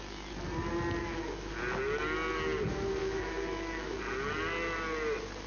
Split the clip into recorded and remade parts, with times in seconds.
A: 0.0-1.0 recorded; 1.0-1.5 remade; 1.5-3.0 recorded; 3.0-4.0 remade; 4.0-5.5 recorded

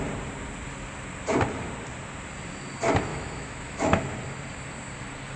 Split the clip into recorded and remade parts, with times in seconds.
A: 0.0-3.1 recorded; 3.1-4.0 remade; 4.0-5.4 recorded